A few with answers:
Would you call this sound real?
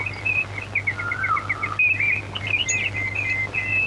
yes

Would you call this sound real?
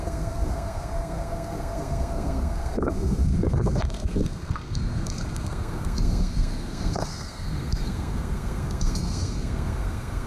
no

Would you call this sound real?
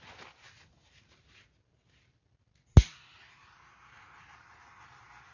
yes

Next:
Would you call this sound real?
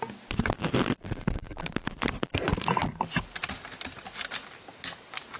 yes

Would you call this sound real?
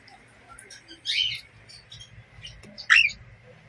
yes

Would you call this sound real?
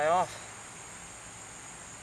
yes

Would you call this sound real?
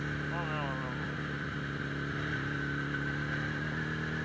yes